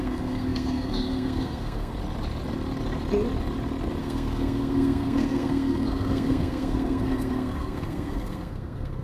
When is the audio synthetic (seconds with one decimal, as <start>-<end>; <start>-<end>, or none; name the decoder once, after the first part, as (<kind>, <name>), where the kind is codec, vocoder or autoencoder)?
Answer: 0.0-1.9 (codec, SNAC); 4.0-9.0